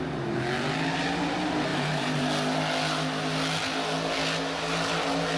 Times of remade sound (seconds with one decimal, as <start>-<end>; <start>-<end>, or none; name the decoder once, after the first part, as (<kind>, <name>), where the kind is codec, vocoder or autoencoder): 1.7-2.2 (vocoder, BigVGAN v2)